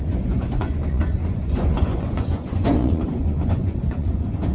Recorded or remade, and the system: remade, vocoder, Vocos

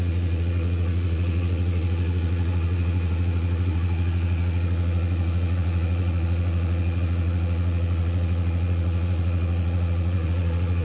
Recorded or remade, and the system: remade, vocoder, Vocos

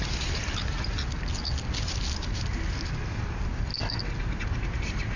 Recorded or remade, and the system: recorded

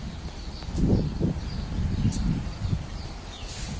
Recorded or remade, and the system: recorded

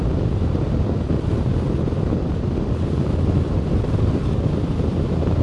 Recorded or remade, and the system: recorded